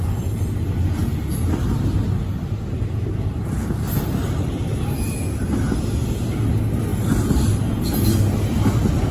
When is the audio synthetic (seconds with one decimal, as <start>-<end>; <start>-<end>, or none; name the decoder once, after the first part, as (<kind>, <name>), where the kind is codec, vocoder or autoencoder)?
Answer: none